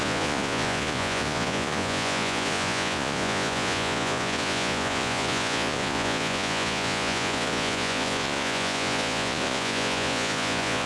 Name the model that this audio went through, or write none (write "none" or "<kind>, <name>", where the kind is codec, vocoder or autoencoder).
vocoder, Vocos